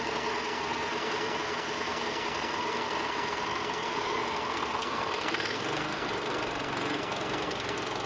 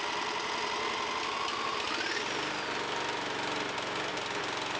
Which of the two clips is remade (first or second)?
first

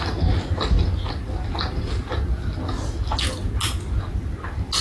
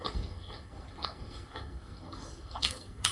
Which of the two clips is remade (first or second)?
second